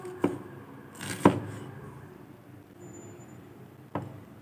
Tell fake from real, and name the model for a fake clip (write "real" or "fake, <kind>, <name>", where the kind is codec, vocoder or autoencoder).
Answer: real